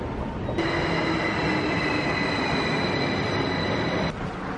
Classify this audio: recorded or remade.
recorded